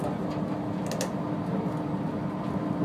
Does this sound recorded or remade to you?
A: recorded